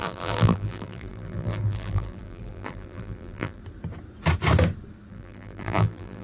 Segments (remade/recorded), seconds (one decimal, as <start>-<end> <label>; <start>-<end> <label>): 0.0-3.6 remade; 3.6-5.1 recorded; 5.1-6.2 remade